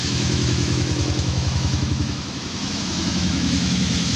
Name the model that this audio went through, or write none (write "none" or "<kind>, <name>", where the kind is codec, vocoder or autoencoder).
autoencoder, DAC-VAE